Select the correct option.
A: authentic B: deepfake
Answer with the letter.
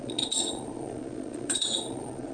B